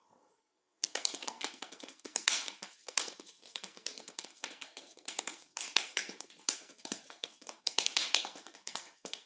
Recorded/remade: remade